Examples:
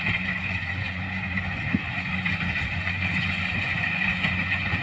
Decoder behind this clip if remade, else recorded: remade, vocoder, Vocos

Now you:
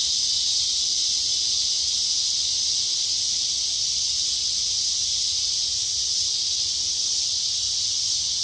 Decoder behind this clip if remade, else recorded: recorded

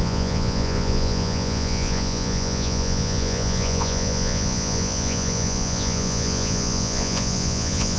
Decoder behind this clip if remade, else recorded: remade, vocoder, Vocos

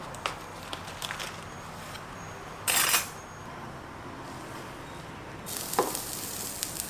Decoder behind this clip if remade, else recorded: recorded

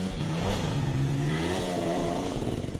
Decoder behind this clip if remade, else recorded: remade, vocoder, Vocos